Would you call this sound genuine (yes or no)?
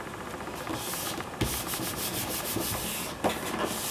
yes